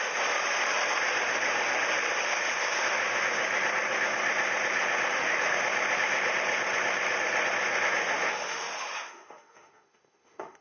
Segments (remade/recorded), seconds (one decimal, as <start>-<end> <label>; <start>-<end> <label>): 0.0-5.1 recorded; 5.1-5.6 remade; 5.6-8.0 recorded; 8.0-10.6 remade